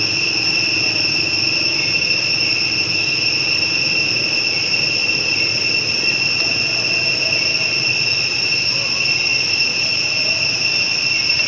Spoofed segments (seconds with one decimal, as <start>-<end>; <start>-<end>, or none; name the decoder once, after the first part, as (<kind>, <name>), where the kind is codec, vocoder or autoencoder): 5.0-5.5 (vocoder, Vocos)